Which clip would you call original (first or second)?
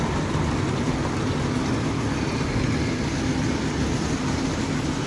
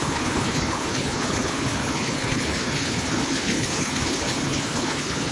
first